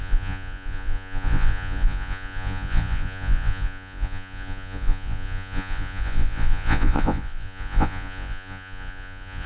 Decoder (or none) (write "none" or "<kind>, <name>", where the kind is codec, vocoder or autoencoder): vocoder, Vocos